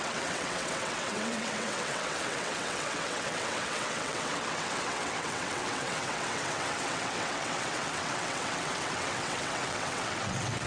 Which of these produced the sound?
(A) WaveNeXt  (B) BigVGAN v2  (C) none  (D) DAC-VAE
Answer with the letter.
A